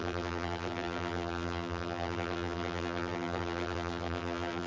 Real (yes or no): no